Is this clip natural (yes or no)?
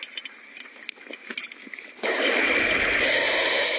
yes